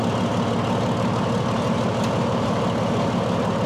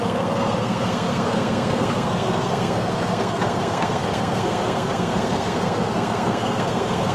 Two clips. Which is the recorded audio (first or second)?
first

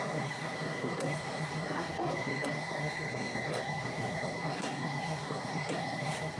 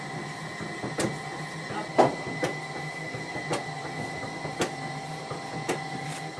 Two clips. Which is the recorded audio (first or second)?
second